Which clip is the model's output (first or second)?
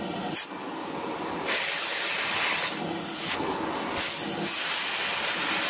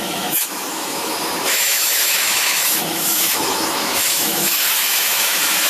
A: second